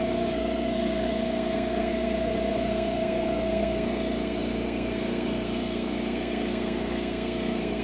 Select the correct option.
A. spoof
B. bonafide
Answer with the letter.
A